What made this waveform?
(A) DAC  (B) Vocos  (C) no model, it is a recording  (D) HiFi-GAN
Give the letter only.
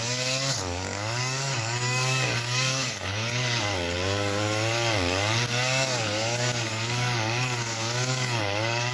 A